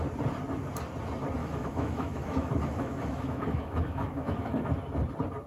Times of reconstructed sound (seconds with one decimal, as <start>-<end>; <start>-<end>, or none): 1.4-4.7